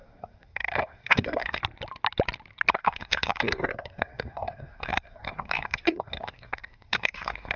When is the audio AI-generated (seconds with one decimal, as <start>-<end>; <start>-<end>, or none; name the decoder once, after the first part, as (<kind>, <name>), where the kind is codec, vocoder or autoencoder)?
0.0-1.6 (codec, SNAC); 2.7-7.6